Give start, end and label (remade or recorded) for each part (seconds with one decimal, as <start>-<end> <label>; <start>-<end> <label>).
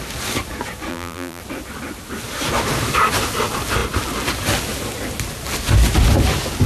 0.0-0.9 recorded; 0.9-1.4 remade; 1.4-6.7 recorded